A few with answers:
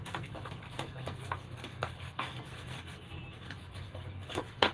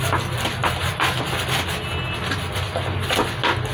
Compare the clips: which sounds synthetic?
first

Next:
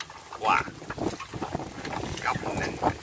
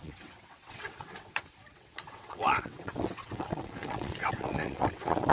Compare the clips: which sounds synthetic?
second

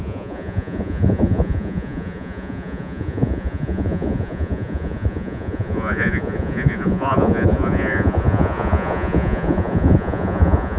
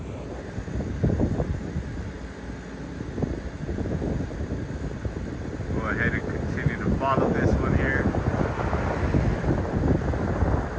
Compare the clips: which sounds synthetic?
first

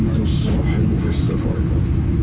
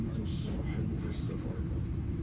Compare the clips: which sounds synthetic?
second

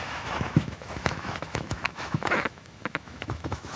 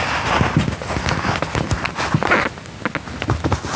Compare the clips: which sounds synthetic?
first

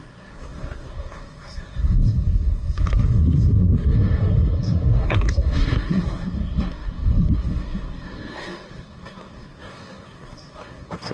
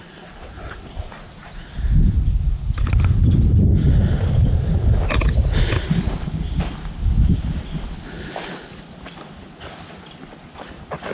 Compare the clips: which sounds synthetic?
first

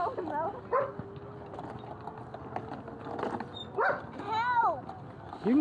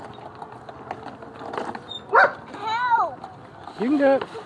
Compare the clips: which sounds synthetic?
second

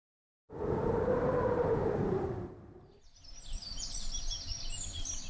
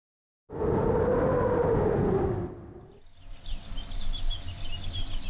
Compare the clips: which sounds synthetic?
first